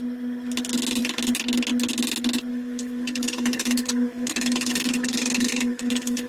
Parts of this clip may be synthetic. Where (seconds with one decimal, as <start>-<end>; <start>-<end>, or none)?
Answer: 2.5-6.3